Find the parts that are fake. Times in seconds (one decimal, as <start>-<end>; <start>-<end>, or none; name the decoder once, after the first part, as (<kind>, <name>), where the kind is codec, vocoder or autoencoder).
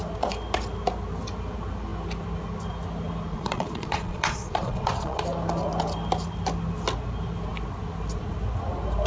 3.3-5.2 (vocoder, Vocos)